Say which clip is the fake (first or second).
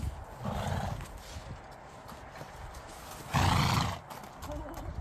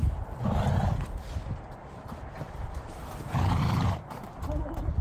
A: second